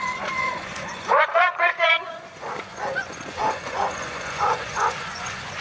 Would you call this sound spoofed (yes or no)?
yes